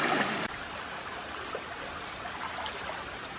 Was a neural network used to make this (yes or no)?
no